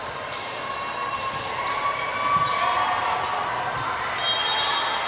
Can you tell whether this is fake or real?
real